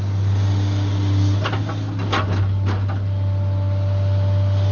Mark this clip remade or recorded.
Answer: recorded